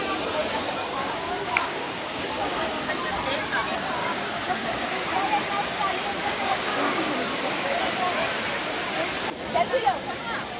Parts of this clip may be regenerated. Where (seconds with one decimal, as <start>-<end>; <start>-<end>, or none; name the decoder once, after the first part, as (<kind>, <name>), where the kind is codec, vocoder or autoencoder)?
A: 0.4-2.9 (codec, DAC); 4.0-5.0; 6.2-7.8